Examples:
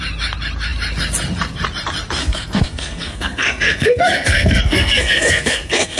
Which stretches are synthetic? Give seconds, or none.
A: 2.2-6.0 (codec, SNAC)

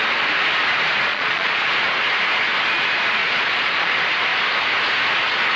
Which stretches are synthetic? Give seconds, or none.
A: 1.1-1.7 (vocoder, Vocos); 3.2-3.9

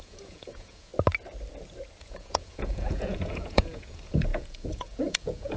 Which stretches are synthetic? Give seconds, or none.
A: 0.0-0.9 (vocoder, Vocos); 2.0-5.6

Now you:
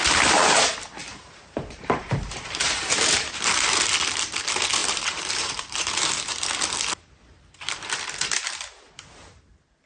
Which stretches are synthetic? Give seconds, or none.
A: 1.0-3.4 (vocoder, BigVGAN v2); 4.8-5.9

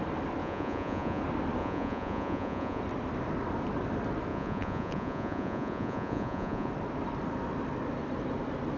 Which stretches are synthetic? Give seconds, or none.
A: 0.4-1.2 (vocoder, Vocos); 1.6-2.8; 4.3-6.7

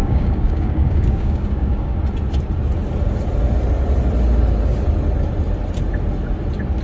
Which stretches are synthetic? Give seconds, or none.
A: 0.0-2.0 (codec, DAC)

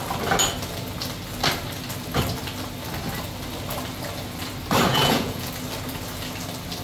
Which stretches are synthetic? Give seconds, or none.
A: 4.9-5.5 (vocoder, Vocos)